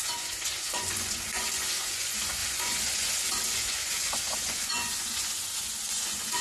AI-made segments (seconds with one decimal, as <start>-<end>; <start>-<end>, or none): 0.0-6.4